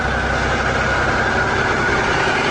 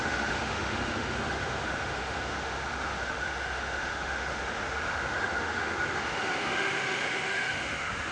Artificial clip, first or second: second